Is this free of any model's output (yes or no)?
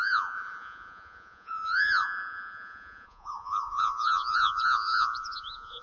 no